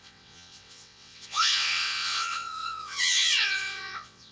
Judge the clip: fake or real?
fake